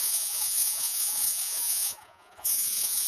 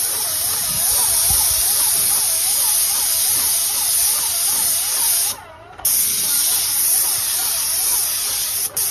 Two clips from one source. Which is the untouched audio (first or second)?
second